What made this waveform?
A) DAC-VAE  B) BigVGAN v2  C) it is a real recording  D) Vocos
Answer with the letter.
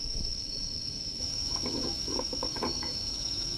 A